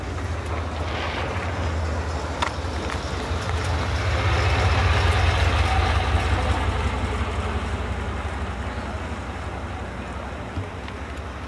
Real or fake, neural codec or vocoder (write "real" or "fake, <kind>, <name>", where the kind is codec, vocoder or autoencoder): real